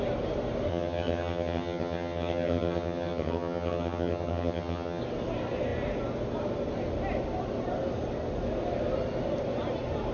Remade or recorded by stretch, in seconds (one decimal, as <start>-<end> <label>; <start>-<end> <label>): 0.0-0.7 recorded; 0.7-5.0 remade; 5.0-10.1 recorded